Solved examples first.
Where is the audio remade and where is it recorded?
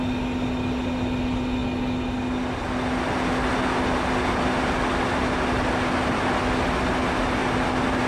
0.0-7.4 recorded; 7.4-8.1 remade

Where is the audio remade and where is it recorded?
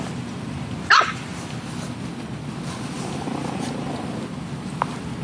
0.0-5.2 recorded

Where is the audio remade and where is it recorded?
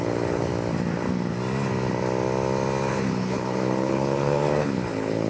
0.0-0.5 remade; 0.5-2.9 recorded; 2.9-5.3 remade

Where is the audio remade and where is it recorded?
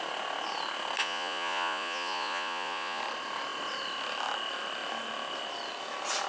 0.0-1.0 recorded; 1.0-3.0 remade; 3.0-6.3 recorded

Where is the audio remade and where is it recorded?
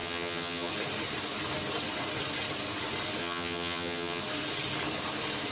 0.0-0.7 remade; 0.7-3.2 recorded; 3.2-4.2 remade; 4.2-5.5 recorded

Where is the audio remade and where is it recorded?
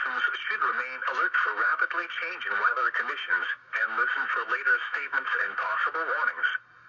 0.0-1.0 recorded; 1.0-2.1 remade; 2.1-2.7 recorded; 2.7-6.4 remade; 6.4-6.9 recorded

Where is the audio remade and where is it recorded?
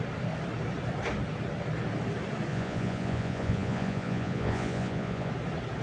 0.0-2.5 recorded; 2.5-5.3 remade; 5.3-5.8 recorded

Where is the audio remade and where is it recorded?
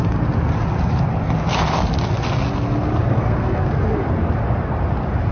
0.0-3.1 recorded; 3.1-3.7 remade; 3.7-5.3 recorded